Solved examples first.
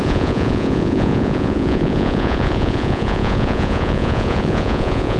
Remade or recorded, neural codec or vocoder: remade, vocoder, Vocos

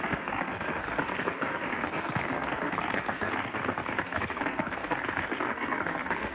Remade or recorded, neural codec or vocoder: remade, codec, SNAC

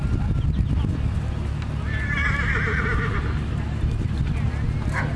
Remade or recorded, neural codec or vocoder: recorded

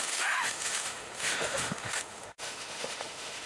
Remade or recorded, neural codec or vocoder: remade, autoencoder, DAC-VAE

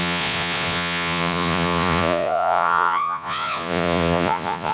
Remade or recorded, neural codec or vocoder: remade, vocoder, Vocos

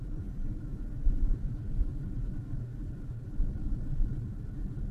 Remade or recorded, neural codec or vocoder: recorded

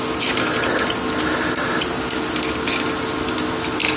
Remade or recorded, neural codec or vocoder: recorded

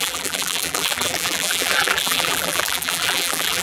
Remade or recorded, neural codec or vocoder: remade, vocoder, BigVGAN v2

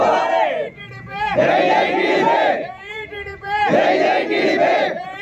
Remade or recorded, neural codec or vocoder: remade, vocoder, Vocos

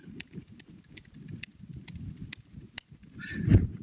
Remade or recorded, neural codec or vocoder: recorded